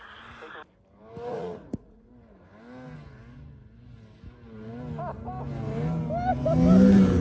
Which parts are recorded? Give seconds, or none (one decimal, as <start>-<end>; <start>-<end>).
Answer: 0.0-1.3; 2.1-7.2